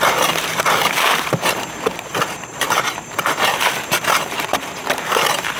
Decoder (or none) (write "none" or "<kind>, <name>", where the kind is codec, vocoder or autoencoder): vocoder, BigVGAN v2